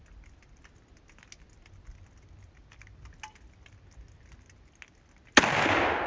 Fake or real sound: real